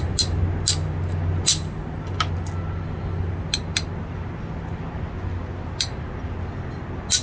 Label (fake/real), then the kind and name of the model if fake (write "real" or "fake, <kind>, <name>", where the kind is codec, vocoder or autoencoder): real